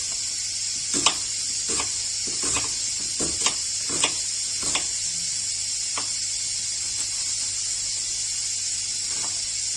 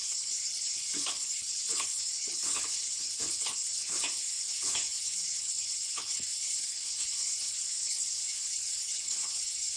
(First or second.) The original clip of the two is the first